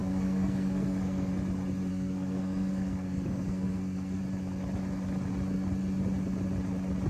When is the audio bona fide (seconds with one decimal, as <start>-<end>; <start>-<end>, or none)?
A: 1.3-1.9; 4.2-7.1